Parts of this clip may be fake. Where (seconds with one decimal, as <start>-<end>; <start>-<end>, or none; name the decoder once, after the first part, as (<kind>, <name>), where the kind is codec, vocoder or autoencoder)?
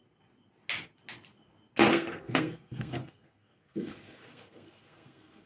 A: 1.9-5.5 (codec, SNAC)